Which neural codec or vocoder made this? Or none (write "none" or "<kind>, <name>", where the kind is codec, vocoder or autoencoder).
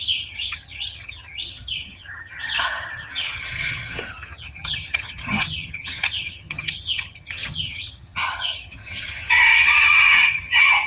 vocoder, HiFi-GAN